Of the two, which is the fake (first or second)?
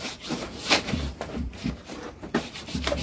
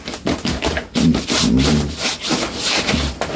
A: first